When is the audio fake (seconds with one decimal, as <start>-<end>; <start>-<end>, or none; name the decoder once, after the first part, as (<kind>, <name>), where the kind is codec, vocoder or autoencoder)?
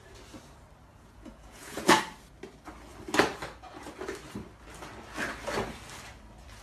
0.9-2.0 (vocoder, Vocos)